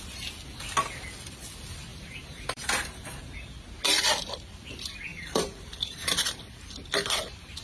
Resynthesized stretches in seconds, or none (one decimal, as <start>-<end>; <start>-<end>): 1.9-3.2; 5.1-6.3